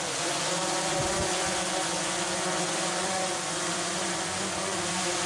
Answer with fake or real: fake